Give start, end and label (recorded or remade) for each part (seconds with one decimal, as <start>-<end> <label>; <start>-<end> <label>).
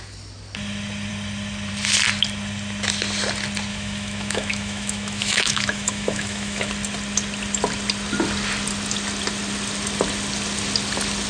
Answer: 0.0-3.7 recorded; 3.7-6.7 remade; 6.7-11.3 recorded